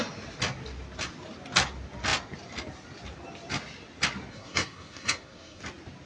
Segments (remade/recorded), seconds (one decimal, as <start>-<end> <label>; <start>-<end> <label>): 0.0-4.3 recorded; 4.3-5.6 remade; 5.6-6.1 recorded